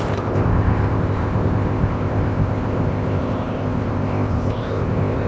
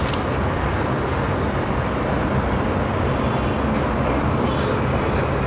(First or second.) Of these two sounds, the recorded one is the second